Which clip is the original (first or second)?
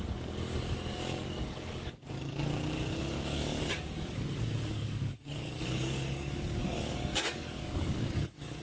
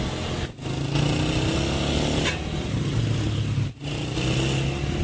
second